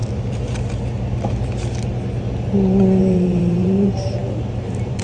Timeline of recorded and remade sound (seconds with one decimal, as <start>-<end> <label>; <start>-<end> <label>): 0.0-3.0 recorded; 3.0-5.0 remade